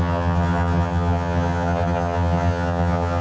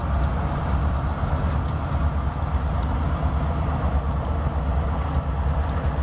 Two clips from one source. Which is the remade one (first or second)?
first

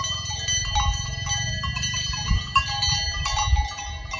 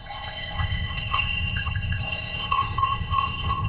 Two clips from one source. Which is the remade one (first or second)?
second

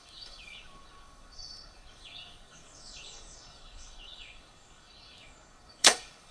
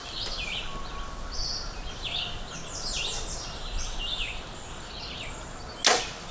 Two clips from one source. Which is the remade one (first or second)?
first